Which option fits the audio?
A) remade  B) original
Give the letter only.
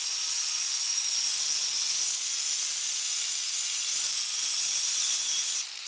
B